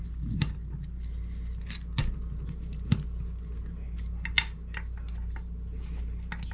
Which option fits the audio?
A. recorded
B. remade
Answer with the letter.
A